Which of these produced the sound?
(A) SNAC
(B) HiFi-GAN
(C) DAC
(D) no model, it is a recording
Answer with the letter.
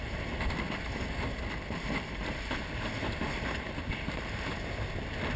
D